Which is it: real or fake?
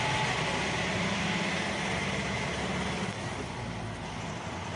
real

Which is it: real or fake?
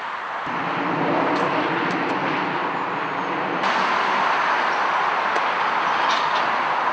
real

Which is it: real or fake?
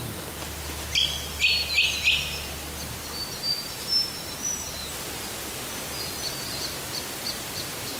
real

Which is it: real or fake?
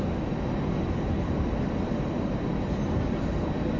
real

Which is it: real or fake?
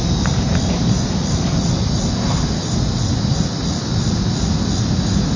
real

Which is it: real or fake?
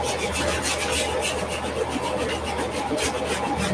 real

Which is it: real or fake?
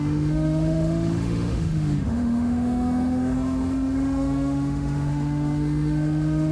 fake